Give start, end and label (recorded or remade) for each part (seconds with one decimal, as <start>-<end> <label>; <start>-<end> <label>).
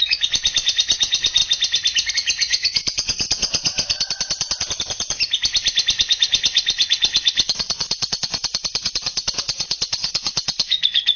0.0-1.4 remade; 1.4-2.1 recorded; 2.1-3.7 remade; 3.7-6.0 recorded; 6.0-11.2 remade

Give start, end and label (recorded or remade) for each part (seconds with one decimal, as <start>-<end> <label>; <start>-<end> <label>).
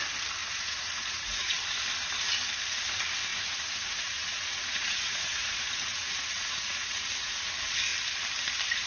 0.0-0.4 recorded; 0.4-1.5 remade; 1.5-3.3 recorded; 3.3-7.4 remade; 7.4-8.9 recorded